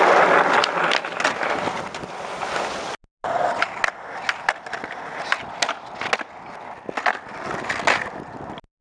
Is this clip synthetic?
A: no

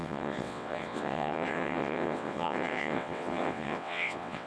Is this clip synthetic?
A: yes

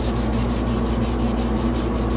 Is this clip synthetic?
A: no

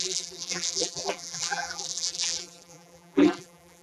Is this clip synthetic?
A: yes